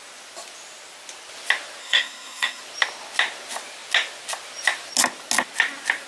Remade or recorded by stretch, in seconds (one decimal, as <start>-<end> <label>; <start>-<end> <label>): 0.0-1.8 recorded; 1.8-2.6 remade; 2.6-6.1 recorded

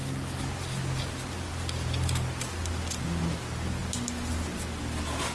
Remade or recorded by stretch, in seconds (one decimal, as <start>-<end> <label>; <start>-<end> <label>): 0.0-5.3 recorded

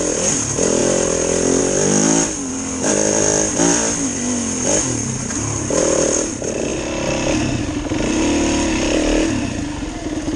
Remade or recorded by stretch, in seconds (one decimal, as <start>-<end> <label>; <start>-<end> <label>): 0.0-10.4 recorded

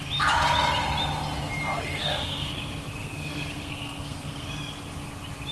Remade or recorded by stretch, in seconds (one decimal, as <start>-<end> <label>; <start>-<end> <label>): 0.0-1.9 recorded; 1.9-2.5 remade; 2.5-3.0 recorded; 3.0-4.5 remade; 4.5-5.5 recorded

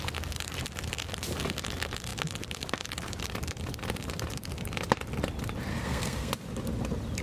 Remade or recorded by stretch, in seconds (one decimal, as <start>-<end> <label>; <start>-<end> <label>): 0.0-5.7 recorded; 5.7-6.3 remade; 6.3-7.2 recorded

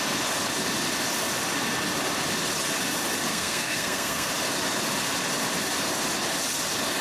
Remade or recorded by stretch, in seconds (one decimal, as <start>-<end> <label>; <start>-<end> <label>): 0.0-3.3 recorded; 3.3-4.3 remade; 4.3-7.0 recorded

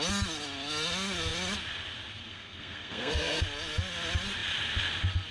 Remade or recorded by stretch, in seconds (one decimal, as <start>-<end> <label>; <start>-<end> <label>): 0.0-2.3 recorded; 2.3-3.4 remade; 3.4-5.3 recorded

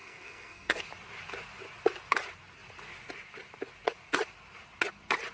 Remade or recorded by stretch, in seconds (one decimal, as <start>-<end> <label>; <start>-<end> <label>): 0.0-0.8 remade; 0.8-5.3 recorded